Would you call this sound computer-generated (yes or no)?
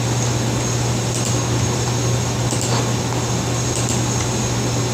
no